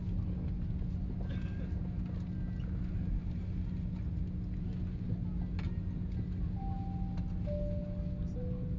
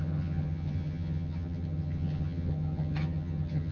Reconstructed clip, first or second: second